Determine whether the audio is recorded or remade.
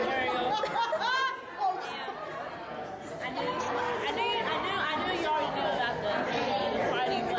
recorded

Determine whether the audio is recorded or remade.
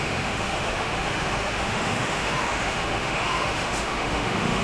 remade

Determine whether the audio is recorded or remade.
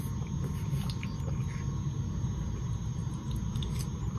recorded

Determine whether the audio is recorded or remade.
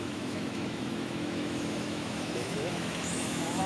remade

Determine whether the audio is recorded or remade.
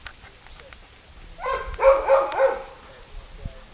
recorded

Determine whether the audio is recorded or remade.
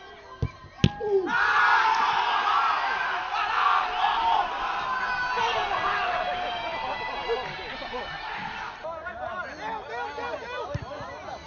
recorded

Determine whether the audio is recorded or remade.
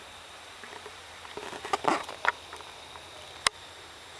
recorded